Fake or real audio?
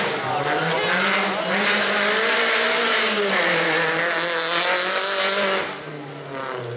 real